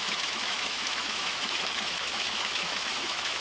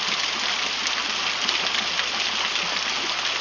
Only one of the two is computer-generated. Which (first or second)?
first